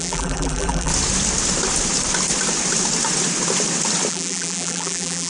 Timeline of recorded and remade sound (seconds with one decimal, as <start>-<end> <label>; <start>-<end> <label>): 0.0-0.9 remade; 0.9-4.1 recorded; 4.1-5.3 remade

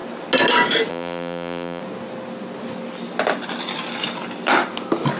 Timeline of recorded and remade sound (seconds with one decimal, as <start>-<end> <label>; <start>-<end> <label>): 0.0-0.9 recorded; 0.9-1.8 remade; 1.8-5.2 recorded

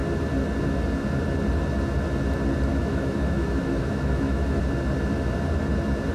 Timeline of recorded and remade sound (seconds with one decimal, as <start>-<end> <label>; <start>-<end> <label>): 0.0-2.7 recorded; 2.7-4.6 remade; 4.6-6.1 recorded

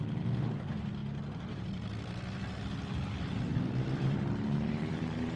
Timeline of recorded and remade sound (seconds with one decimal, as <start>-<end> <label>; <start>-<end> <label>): 0.0-3.5 recorded; 3.5-5.4 remade

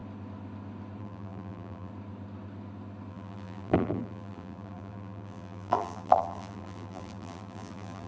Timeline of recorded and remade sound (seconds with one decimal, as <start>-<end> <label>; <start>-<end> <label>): 0.0-1.0 recorded; 1.0-1.9 remade; 1.9-3.1 recorded; 3.1-8.1 remade

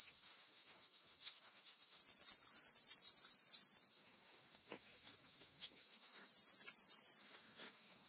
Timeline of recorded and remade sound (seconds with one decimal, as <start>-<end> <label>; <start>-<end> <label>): 0.0-2.0 remade; 2.0-3.9 recorded; 3.9-6.3 remade; 6.3-7.2 recorded; 7.2-8.1 remade

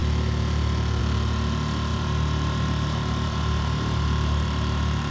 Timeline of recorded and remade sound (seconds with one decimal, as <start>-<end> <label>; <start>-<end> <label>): 0.0-1.9 recorded; 1.9-5.1 remade

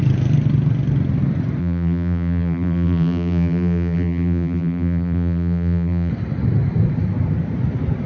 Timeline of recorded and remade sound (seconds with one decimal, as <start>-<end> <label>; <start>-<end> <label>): 0.0-1.6 recorded; 1.6-6.1 remade; 6.1-8.1 recorded